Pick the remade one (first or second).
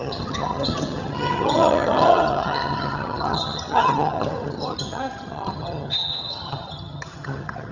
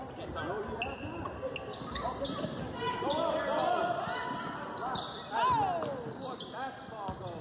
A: first